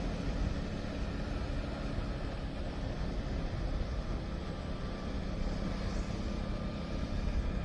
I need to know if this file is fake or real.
real